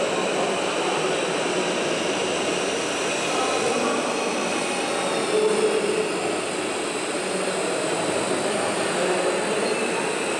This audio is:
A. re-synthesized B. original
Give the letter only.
B